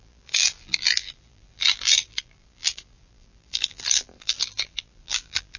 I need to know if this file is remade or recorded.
remade